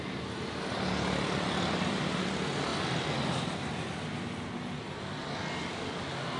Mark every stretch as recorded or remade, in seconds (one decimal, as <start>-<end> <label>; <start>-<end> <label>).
0.0-6.4 recorded